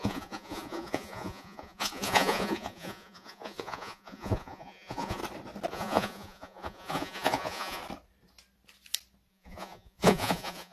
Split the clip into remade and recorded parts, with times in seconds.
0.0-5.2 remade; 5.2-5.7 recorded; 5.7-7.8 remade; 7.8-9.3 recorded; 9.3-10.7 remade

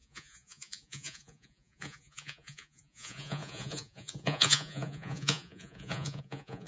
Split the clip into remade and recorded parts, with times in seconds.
0.0-6.7 remade

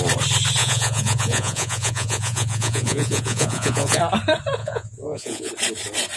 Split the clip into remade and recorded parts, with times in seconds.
0.0-0.6 recorded; 0.6-4.0 remade; 4.0-4.6 recorded; 4.6-5.5 remade; 5.5-6.2 recorded